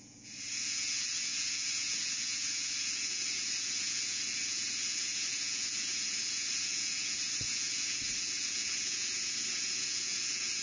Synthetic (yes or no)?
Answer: yes